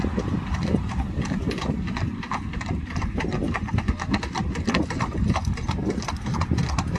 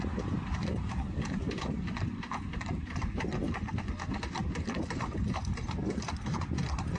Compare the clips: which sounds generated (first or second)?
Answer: second